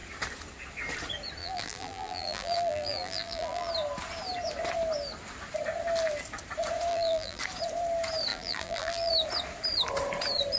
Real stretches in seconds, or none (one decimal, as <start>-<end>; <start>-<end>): 0.0-1.4; 3.7-6.9; 7.4-8.3; 9.1-10.6